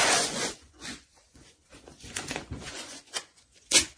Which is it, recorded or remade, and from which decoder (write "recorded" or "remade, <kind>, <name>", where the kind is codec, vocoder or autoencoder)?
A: remade, vocoder, Vocos